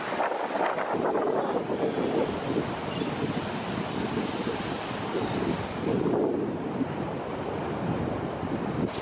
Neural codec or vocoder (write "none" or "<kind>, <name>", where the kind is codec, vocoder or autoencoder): none